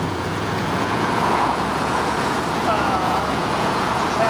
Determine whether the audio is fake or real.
fake